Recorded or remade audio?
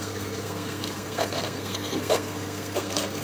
remade